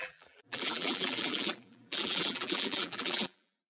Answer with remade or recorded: remade